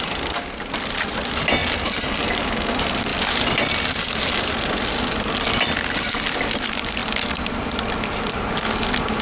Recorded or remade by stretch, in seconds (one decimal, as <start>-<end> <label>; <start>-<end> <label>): 0.0-9.2 recorded